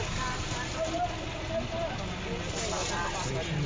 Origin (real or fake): real